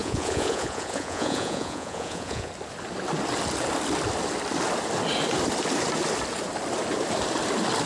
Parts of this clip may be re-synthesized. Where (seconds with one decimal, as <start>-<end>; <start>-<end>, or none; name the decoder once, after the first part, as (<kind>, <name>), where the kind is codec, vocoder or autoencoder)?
0.0-2.5 (vocoder, Vocos)